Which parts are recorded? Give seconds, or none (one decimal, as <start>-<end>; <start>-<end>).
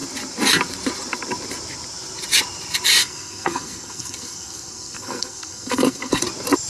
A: 0.0-3.0; 6.2-6.7